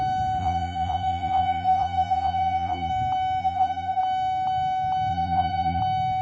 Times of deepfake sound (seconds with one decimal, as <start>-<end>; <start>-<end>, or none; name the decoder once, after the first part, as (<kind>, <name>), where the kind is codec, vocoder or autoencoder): 0.4-2.9 (vocoder, Vocos); 3.4-4.0; 5.1-5.8